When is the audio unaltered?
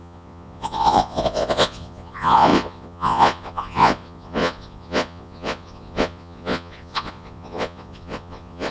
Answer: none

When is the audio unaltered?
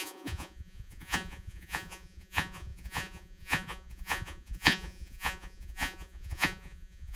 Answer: none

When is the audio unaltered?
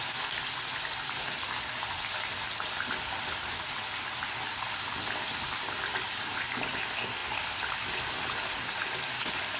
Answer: 0.0-9.6